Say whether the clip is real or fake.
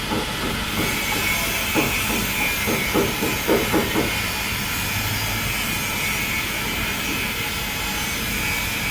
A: real